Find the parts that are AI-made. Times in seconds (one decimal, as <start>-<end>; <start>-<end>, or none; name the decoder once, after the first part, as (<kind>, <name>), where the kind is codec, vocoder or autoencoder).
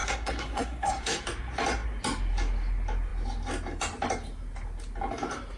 0.0-1.2 (codec, SNAC)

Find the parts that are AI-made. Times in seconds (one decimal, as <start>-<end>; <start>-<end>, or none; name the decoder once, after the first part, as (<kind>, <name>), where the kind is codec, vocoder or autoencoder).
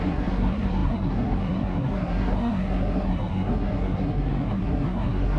0.0-5.4 (codec, SNAC)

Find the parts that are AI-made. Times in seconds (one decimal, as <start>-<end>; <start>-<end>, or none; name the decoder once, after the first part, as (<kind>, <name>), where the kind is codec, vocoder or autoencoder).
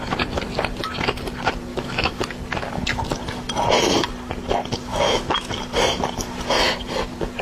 1.7-2.2 (autoencoder, DAC-VAE); 4.9-5.5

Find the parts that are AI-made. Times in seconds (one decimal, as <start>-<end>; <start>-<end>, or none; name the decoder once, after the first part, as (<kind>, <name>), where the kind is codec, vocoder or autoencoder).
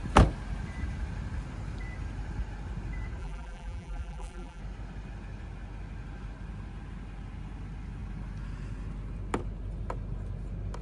3.2-4.6 (vocoder, BigVGAN v2)